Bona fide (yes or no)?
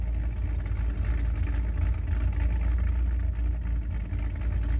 yes